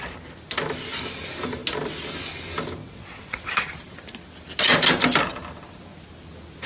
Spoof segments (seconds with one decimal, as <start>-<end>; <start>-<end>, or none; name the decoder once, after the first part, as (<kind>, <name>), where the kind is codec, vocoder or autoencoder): 2.8-3.5 (vocoder, WaveNeXt)